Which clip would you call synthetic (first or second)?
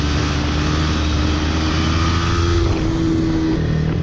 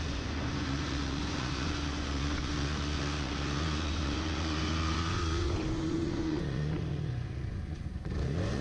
second